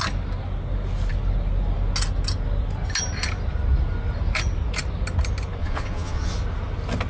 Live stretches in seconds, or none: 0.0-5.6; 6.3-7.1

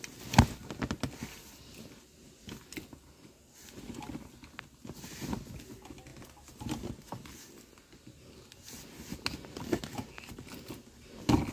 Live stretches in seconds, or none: 0.0-11.5

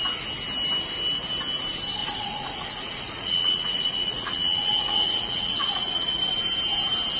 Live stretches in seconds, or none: 0.0-2.0; 6.3-7.2

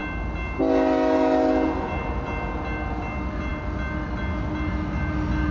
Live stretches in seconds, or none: 0.0-5.5

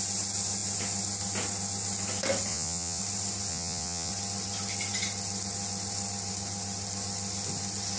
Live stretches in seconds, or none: 0.0-2.5; 3.0-3.5; 4.1-8.0

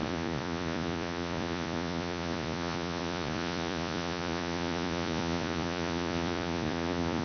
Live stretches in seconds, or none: none

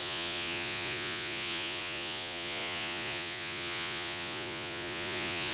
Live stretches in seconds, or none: none